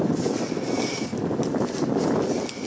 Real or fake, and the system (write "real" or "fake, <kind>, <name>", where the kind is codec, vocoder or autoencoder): real